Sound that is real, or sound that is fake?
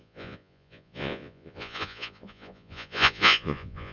fake